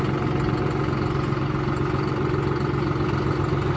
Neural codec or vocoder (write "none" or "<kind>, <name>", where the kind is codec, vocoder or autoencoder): none